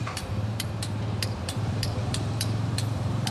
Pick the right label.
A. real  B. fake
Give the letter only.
B